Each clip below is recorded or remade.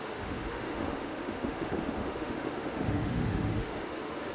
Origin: remade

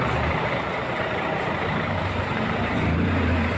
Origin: remade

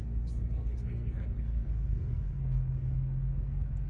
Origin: remade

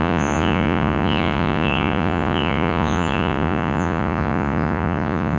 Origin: remade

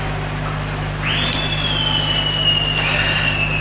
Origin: recorded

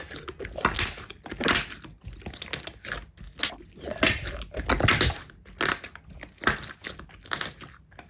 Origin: recorded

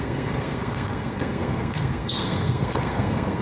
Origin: remade